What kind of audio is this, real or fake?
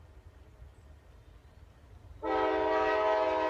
real